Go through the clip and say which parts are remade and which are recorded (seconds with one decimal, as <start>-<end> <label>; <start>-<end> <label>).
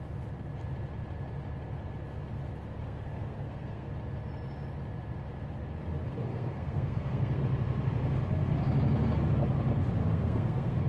0.0-2.8 recorded; 2.8-3.9 remade; 3.9-6.3 recorded; 6.3-7.4 remade; 7.4-10.0 recorded; 10.0-10.9 remade